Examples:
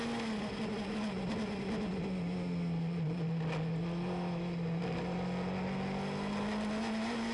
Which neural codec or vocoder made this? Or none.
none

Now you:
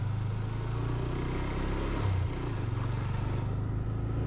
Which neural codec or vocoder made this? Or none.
none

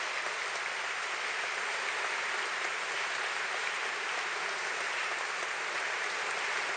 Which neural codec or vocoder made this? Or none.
none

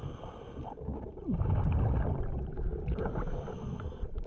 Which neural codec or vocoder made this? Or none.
none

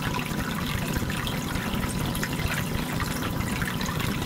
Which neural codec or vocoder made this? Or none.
none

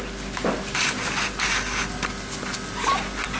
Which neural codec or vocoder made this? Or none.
none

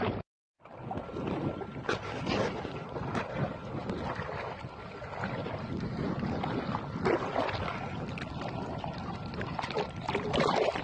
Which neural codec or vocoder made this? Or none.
none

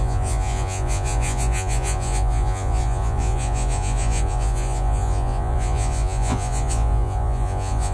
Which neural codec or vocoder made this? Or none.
vocoder, Vocos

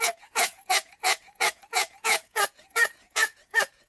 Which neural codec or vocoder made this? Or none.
vocoder, Vocos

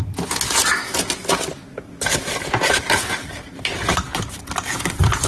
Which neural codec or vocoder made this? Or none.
none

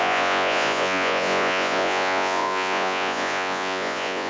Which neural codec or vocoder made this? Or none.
vocoder, Vocos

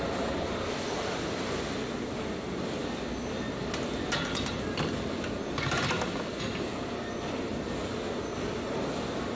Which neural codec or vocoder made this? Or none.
none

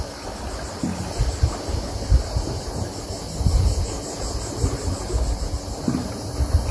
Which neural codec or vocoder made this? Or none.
none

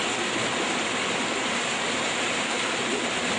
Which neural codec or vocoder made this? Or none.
none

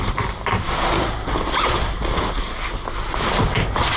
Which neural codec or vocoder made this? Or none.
none